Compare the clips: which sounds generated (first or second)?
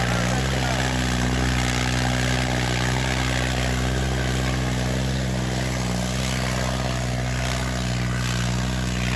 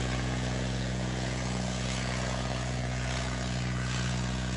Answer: second